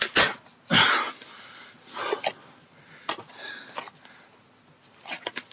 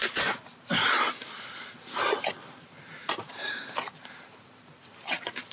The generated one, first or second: second